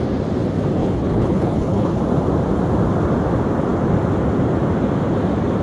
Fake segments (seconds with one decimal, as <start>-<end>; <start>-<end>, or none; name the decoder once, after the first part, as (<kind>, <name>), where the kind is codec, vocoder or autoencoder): 0.8-2.0 (codec, HILCodec)